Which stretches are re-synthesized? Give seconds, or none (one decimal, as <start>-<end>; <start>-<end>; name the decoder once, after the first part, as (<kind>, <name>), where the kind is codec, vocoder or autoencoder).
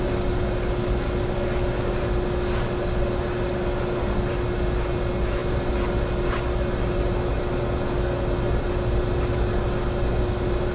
none